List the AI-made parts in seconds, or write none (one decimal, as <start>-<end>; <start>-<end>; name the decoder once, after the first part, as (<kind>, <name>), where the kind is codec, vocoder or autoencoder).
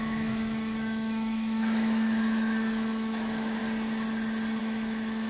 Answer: 0.0-3.6 (autoencoder, DAC-VAE); 4.6-5.3